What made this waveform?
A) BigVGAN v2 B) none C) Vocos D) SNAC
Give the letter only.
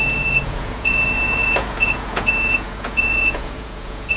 C